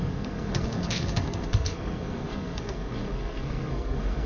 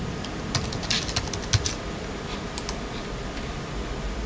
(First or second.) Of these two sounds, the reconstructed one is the first